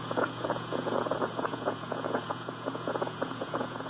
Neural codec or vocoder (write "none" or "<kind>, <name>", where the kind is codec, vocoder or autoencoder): vocoder, Vocos